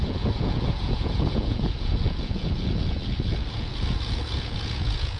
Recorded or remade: remade